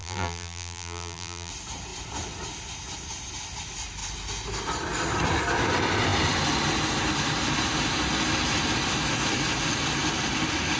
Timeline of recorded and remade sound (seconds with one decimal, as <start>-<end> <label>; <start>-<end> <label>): 0.0-1.5 remade; 1.5-10.8 recorded